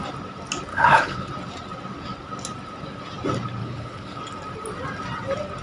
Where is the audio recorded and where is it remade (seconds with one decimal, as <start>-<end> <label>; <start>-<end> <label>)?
0.0-0.7 recorded; 0.7-1.3 remade; 1.3-3.6 recorded; 3.6-4.2 remade; 4.2-5.6 recorded